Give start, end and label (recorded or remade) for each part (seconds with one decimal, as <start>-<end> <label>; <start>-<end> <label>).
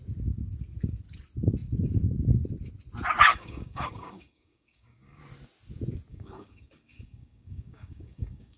0.0-3.3 recorded; 3.3-5.2 remade; 5.2-6.1 recorded; 6.1-8.6 remade